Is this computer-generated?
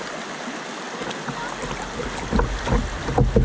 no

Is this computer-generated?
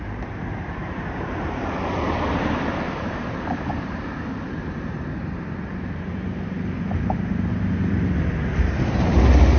yes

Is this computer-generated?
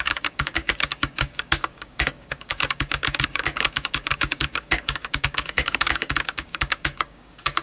yes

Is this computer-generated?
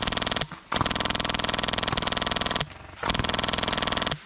no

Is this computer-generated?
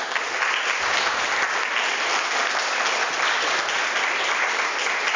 no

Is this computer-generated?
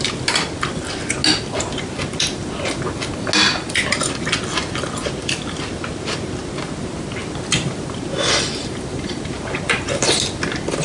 no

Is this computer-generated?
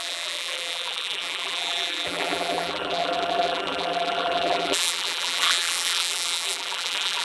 yes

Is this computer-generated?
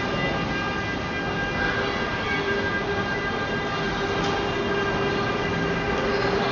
no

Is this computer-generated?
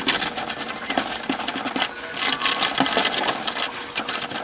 no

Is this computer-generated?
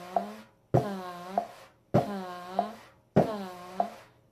no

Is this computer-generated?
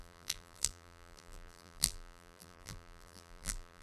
yes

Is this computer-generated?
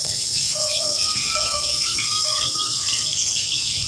yes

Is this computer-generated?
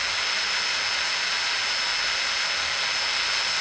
no